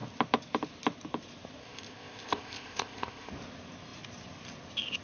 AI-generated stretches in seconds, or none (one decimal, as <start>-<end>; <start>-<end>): 1.6-3.3